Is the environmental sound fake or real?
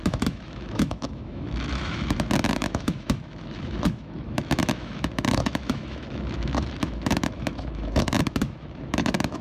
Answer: fake